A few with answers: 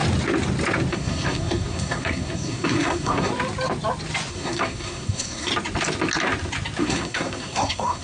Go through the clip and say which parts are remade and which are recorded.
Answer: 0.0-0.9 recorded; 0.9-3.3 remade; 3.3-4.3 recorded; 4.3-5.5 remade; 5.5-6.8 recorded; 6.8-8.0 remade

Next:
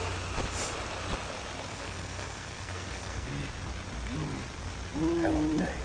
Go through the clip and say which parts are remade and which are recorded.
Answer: 0.0-1.7 recorded; 1.7-3.3 remade; 3.3-5.8 recorded

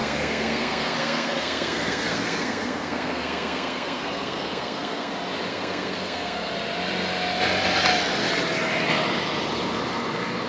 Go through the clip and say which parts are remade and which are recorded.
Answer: 0.0-5.1 remade; 5.1-5.5 recorded; 5.5-6.5 remade; 6.5-10.5 recorded

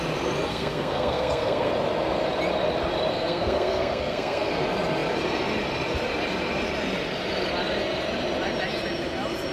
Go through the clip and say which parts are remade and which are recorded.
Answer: 0.0-0.5 recorded; 0.5-1.7 remade; 1.7-3.1 recorded; 3.1-4.5 remade; 4.5-9.5 recorded

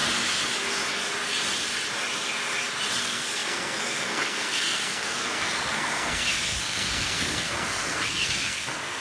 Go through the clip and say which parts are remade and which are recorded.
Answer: 0.0-3.0 recorded; 3.0-9.0 remade

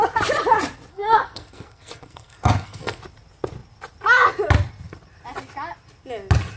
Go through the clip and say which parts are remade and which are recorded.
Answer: 0.0-0.9 recorded; 0.9-3.0 remade; 3.0-6.6 recorded